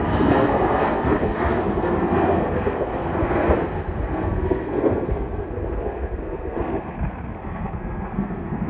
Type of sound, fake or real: fake